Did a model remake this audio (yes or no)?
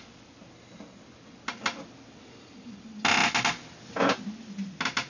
no